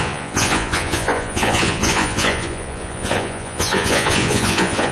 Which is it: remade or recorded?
remade